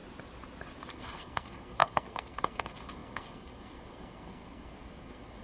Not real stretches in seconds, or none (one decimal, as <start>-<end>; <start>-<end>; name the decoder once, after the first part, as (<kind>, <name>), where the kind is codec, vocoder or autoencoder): 0.9-5.4 (codec, SNAC)

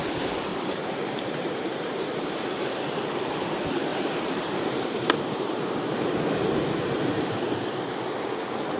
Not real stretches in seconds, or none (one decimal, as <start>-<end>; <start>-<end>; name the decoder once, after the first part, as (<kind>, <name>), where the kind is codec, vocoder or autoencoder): 0.5-2.0 (vocoder, BigVGAN v2); 3.9-5.6

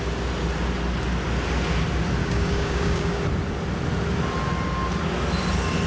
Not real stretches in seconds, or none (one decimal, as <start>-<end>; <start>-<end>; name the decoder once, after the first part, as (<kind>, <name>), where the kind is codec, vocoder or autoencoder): 2.2-3.2 (codec, DAC)

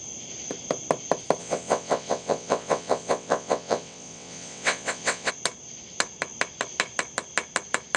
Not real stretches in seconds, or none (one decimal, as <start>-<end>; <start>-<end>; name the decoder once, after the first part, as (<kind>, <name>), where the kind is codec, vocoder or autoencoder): 1.4-5.3 (vocoder, WaveNeXt)

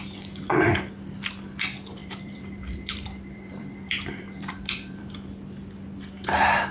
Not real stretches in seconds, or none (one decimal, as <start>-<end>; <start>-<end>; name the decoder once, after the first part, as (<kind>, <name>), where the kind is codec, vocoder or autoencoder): 2.0-5.1 (vocoder, BigVGAN v2)

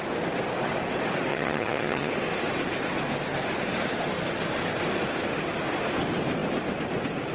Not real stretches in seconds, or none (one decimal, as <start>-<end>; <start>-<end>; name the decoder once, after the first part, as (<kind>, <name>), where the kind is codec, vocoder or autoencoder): 1.3-2.1 (vocoder, HiFi-GAN)

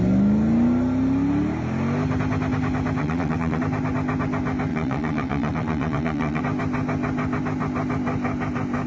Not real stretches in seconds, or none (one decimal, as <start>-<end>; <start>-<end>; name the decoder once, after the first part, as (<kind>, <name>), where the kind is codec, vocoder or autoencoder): 3.0-3.6 (vocoder, WaveNeXt); 4.7-6.4

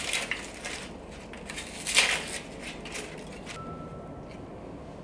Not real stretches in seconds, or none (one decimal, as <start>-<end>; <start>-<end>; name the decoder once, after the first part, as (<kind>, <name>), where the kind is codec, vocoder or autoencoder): none